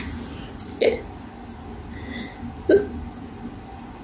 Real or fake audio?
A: real